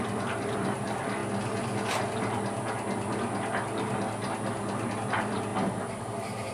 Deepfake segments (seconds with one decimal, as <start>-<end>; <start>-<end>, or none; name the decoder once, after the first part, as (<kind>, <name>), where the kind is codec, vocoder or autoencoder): 0.0-1.2 (vocoder, BigVGAN v2); 5.1-6.5